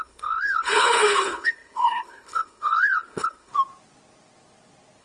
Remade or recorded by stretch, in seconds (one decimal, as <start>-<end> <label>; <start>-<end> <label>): 0.0-3.5 remade; 3.5-5.0 recorded